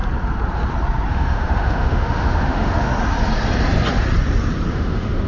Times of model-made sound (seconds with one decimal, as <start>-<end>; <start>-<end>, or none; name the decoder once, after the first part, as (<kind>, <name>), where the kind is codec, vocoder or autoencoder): 1.1-2.9 (autoencoder, DAC-VAE); 4.7-5.3